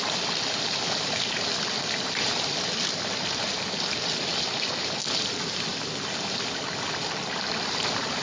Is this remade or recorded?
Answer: recorded